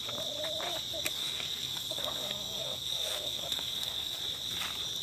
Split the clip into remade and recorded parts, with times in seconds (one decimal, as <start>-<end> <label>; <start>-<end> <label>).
0.0-1.2 recorded; 1.2-4.2 remade; 4.2-5.0 recorded